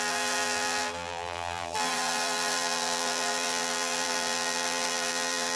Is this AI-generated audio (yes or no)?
yes